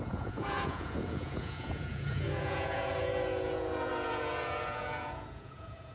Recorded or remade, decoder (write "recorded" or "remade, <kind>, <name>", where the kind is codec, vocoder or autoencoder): remade, vocoder, Vocos